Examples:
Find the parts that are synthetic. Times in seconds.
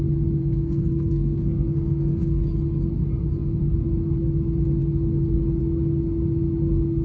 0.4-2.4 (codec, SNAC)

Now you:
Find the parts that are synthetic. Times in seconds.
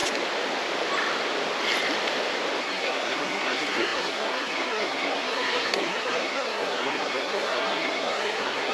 2.6-8.7 (codec, SNAC)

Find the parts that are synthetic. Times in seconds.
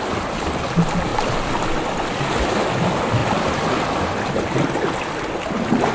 none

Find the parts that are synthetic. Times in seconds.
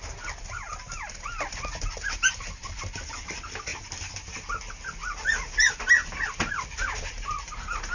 none